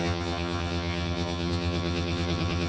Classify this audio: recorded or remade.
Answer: remade